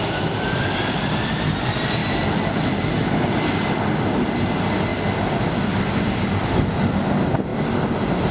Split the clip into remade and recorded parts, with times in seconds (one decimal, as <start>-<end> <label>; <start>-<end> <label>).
0.0-8.3 recorded